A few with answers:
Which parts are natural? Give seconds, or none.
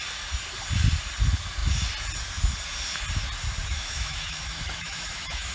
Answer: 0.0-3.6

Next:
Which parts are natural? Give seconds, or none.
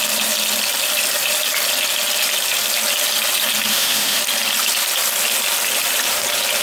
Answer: 0.0-3.7; 4.2-6.6